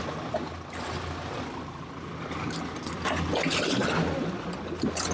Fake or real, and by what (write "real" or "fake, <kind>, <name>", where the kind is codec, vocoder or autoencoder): real